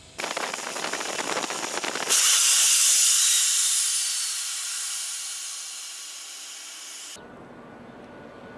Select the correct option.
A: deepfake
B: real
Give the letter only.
B